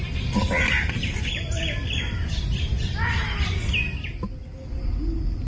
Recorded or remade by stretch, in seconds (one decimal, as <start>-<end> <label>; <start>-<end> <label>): 0.0-5.5 recorded